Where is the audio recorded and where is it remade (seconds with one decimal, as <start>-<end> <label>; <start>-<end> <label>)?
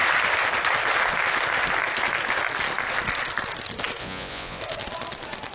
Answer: 0.0-4.0 recorded; 4.0-4.6 remade; 4.6-5.5 recorded